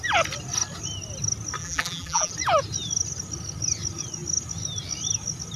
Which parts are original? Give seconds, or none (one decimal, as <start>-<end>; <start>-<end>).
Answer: 0.0-1.6; 2.3-5.6